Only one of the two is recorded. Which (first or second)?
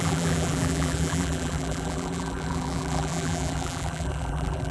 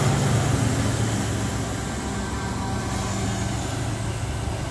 second